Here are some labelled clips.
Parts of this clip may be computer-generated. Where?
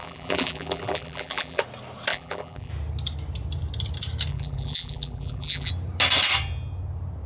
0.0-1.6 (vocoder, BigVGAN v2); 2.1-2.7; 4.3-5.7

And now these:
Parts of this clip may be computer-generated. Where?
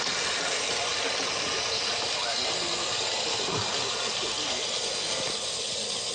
none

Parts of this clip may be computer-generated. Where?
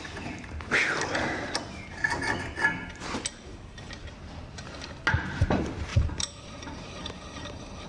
3.5-4.3 (vocoder, BigVGAN v2); 5.9-7.5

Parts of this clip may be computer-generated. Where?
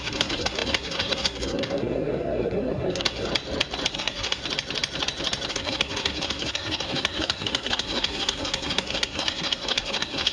0.0-3.3 (codec, SNAC); 3.9-4.4; 5.5-10.3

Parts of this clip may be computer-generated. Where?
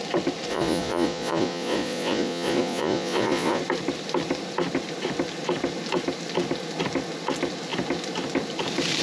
0.5-3.6 (vocoder, Vocos)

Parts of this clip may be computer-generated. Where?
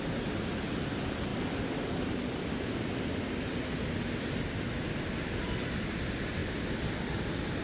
none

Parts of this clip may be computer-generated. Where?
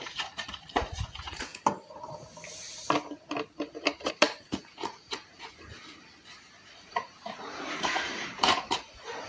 0.0-1.5 (vocoder, Vocos); 4.1-5.7; 6.7-9.3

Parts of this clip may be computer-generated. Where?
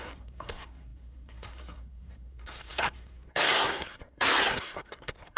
0.0-5.4 (codec, SNAC)